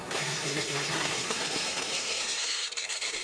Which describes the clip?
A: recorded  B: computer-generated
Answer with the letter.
B